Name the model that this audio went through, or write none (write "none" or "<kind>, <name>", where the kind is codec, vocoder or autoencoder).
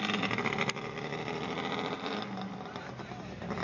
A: none